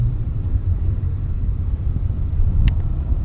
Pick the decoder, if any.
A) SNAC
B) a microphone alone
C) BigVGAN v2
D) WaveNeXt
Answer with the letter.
C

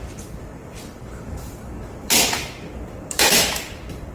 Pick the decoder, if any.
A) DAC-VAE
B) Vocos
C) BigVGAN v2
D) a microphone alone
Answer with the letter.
C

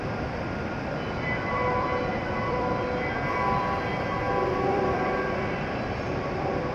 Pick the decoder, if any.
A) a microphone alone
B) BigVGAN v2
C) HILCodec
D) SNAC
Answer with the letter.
B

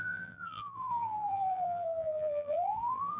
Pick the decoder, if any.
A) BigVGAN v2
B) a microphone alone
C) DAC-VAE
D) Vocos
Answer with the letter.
A